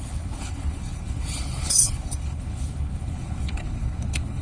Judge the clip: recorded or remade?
remade